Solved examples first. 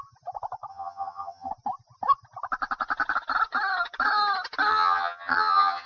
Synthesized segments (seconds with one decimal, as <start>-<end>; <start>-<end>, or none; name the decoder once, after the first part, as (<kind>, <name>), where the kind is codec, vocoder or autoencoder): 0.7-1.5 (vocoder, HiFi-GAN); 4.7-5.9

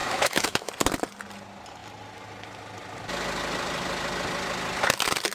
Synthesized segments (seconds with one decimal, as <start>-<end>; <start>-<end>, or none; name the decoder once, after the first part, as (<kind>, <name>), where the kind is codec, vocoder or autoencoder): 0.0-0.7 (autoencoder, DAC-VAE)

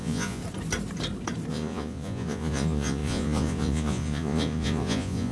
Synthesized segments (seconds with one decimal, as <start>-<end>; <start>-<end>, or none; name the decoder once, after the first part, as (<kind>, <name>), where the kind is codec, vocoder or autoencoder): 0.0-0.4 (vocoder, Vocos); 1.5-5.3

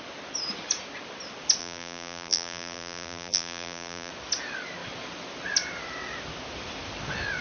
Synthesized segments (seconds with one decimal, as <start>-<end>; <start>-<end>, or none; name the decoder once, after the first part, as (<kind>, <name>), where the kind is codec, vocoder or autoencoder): 1.6-4.1 (vocoder, BigVGAN v2)

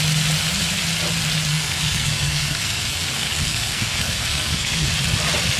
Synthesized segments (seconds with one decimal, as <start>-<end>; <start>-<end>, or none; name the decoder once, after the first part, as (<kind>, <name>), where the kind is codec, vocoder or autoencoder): 1.5-4.9 (codec, SNAC)